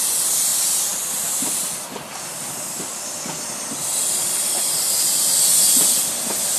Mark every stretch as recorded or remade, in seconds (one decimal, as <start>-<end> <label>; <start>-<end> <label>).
0.0-0.5 recorded; 0.5-3.4 remade; 3.4-4.0 recorded; 4.0-5.4 remade; 5.4-6.6 recorded